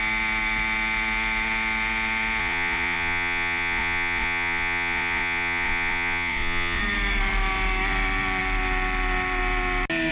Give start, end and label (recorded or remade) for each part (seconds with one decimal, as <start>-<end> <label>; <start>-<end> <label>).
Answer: 0.0-2.4 recorded; 2.4-6.8 remade; 6.8-10.1 recorded